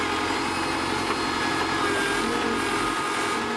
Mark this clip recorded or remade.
recorded